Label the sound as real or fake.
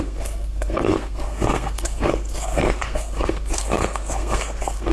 fake